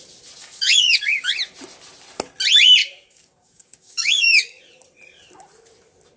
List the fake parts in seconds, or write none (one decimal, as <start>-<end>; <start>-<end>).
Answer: 0.4-1.3; 2.8-4.6